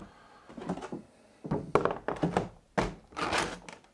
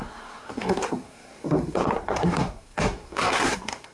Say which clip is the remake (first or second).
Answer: second